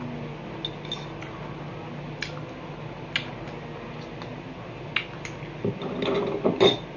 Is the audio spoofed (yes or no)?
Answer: no